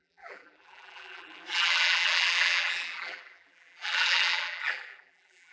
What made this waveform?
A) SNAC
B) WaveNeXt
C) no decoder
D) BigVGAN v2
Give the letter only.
D